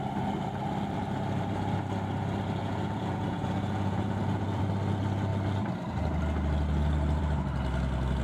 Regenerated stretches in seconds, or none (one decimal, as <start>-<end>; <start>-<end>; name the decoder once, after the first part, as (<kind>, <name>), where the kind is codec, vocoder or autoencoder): 2.6-4.6 (vocoder, Vocos)